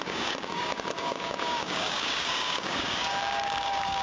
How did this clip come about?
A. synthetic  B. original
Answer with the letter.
A